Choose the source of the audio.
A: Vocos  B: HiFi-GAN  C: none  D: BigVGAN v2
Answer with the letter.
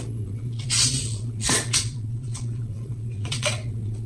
A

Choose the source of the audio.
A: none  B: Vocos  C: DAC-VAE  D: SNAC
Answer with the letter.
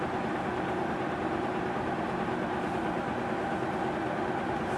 A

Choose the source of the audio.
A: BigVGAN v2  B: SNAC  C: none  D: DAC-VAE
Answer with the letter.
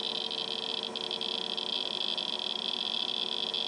C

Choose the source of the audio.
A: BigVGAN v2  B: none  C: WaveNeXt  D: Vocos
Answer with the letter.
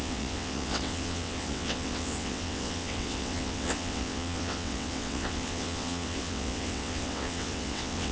C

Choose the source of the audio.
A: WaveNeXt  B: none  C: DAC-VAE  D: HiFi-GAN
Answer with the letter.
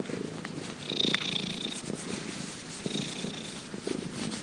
B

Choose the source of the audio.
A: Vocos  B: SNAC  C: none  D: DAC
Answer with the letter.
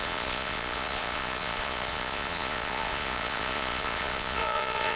A